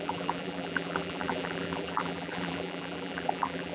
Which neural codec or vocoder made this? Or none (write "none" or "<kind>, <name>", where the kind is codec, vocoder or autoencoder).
vocoder, BigVGAN v2